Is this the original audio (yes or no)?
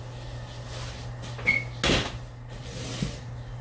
yes